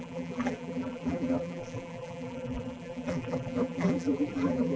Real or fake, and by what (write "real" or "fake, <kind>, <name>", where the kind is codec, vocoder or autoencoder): fake, vocoder, BigVGAN v2